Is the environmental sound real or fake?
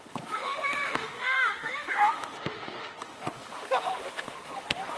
fake